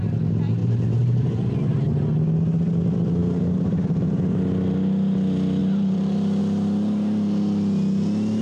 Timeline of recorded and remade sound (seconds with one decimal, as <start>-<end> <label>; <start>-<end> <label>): 0.0-0.6 recorded; 0.6-1.8 remade; 1.8-3.2 recorded; 3.2-4.2 remade; 4.2-5.6 recorded; 5.6-6.4 remade; 6.4-8.4 recorded